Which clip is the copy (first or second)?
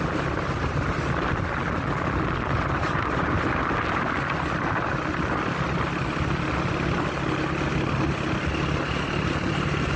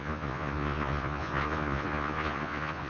second